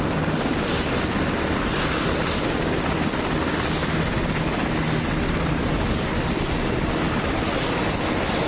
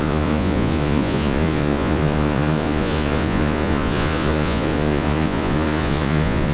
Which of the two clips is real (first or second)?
first